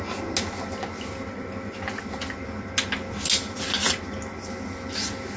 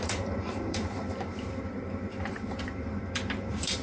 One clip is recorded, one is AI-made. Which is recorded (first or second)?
first